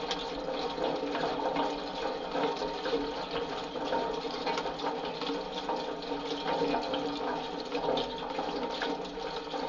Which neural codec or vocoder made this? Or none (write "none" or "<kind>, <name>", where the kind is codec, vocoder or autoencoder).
none